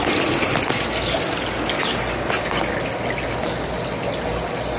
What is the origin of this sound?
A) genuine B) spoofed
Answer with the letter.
A